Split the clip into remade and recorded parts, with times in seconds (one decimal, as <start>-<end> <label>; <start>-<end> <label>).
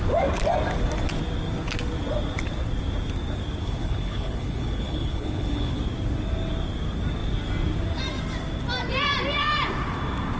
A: 0.0-3.6 recorded; 3.6-5.8 remade; 5.8-10.4 recorded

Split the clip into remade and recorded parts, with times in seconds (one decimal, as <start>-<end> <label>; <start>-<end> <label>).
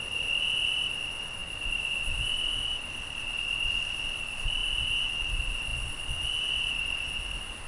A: 0.0-7.7 recorded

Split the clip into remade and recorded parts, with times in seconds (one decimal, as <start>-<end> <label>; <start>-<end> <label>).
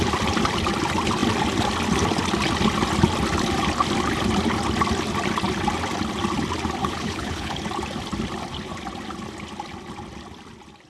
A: 0.0-6.8 recorded; 6.8-7.6 remade; 7.6-10.9 recorded